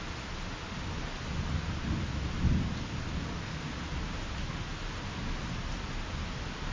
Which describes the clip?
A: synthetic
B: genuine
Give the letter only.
B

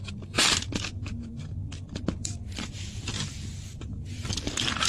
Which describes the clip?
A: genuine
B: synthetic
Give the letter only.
B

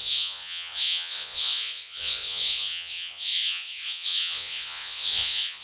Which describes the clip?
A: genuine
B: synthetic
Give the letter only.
B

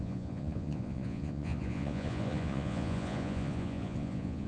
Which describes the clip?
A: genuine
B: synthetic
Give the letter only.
B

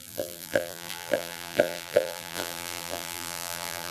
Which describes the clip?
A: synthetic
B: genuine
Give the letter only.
A